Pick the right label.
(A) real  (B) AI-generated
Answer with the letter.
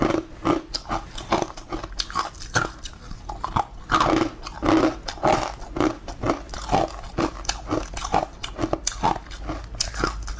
A